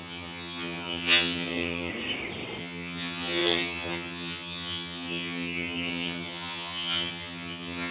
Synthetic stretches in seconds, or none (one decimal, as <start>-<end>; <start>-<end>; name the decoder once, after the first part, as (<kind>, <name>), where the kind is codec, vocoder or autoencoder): 0.0-1.9 (vocoder, HiFi-GAN); 2.6-7.9